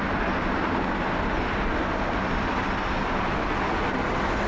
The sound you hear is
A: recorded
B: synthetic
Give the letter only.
A